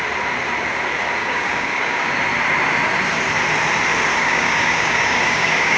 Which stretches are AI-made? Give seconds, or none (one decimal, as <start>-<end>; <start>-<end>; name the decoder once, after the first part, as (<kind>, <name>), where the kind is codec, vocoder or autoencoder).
1.2-2.1 (codec, DAC); 4.1-5.8